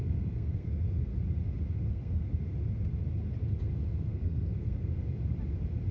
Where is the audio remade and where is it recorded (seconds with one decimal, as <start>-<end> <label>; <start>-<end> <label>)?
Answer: 0.0-1.1 remade; 1.1-1.9 recorded; 1.9-2.3 remade; 2.3-3.6 recorded; 3.6-5.0 remade; 5.0-5.9 recorded